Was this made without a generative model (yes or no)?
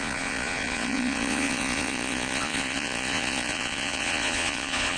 no